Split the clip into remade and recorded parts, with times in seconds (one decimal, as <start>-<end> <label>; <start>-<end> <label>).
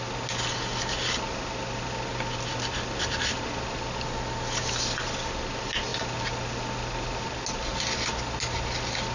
0.0-9.1 recorded